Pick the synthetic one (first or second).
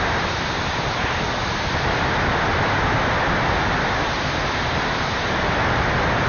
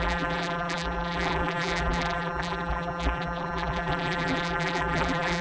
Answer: second